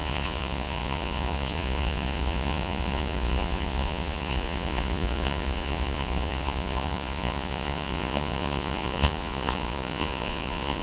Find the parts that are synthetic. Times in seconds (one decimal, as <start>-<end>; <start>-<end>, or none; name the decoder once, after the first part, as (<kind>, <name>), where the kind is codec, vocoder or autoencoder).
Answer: 0.0-10.8 (vocoder, Vocos)